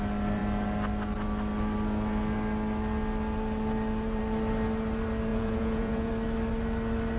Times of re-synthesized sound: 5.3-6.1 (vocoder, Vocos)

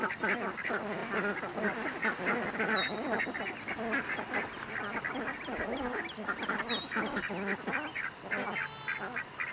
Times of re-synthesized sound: none

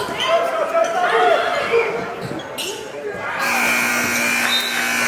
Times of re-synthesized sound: none

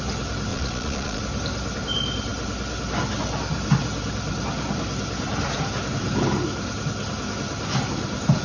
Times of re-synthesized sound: 0.5-1.2 (vocoder, Vocos)

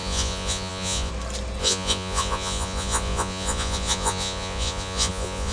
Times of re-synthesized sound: 0.0-1.1 (vocoder, Vocos); 1.6-5.5

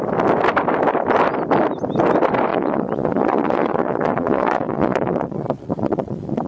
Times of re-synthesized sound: 2.5-6.5 (vocoder, Vocos)

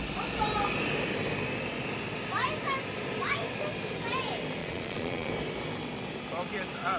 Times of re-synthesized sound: 4.6-5.3 (vocoder, Vocos)